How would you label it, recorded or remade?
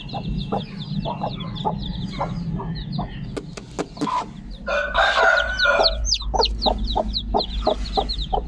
recorded